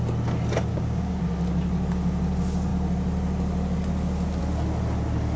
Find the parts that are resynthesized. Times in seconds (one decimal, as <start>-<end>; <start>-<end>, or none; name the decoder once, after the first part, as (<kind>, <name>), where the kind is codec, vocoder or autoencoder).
0.7-1.2 (codec, DAC)